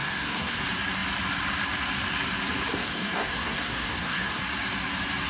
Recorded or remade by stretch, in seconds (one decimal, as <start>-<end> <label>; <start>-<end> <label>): 0.0-0.6 remade; 0.6-2.7 recorded; 2.7-4.4 remade; 4.4-5.3 recorded